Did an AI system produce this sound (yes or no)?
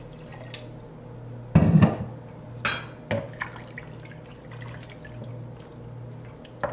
no